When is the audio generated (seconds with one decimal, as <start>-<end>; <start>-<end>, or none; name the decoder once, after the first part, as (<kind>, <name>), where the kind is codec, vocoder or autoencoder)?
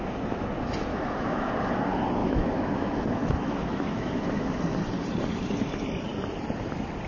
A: 0.9-1.5 (autoencoder, DAC-VAE); 2.2-4.6